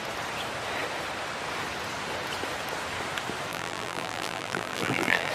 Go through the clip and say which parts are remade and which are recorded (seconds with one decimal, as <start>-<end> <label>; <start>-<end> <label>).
0.0-3.5 recorded; 3.5-5.3 remade